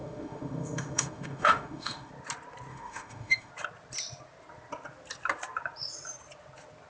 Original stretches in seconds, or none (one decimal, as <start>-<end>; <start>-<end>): 2.1-2.7; 3.5-6.9